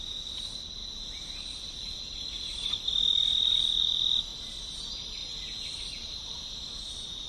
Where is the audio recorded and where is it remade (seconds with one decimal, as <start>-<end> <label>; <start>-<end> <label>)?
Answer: 0.0-7.3 recorded